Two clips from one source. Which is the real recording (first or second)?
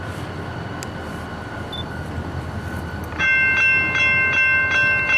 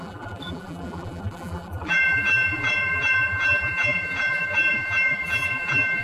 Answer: first